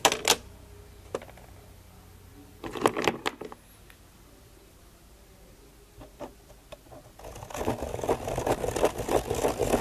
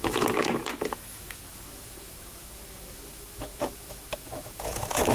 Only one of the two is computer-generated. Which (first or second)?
second